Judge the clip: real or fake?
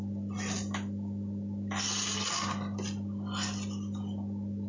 real